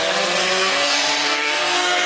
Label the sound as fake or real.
fake